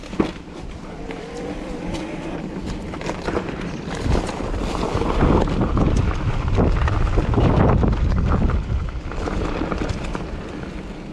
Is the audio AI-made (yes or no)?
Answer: yes